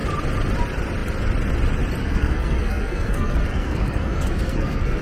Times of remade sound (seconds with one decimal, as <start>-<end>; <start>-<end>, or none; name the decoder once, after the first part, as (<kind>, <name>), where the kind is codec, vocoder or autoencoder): 2.0-5.0 (codec, SNAC)